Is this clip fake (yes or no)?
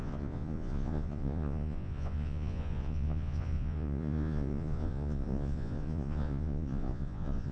yes